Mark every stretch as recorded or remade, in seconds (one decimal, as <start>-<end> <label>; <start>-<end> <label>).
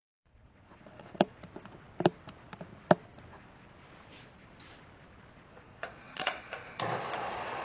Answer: 0.0-1.4 remade; 1.4-5.3 recorded; 5.3-6.6 remade; 6.6-7.1 recorded; 7.1-7.6 remade